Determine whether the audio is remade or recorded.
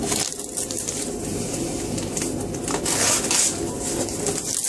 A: recorded